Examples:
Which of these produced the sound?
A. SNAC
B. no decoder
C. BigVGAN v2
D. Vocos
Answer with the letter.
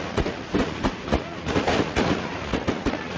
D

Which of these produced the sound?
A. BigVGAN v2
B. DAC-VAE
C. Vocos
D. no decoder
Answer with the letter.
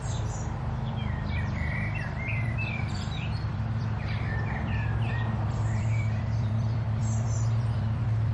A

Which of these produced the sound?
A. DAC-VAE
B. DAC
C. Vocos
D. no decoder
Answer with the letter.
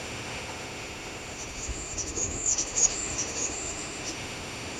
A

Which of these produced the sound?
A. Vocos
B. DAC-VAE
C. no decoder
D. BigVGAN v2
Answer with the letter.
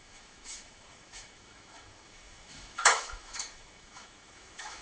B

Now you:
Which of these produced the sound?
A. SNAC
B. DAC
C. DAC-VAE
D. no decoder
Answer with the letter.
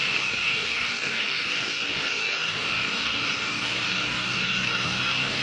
B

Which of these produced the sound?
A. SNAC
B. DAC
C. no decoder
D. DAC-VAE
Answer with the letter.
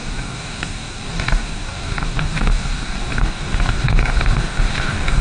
B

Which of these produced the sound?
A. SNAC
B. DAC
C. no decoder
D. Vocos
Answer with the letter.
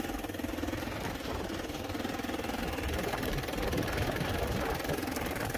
C